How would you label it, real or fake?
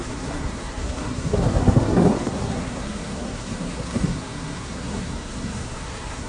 fake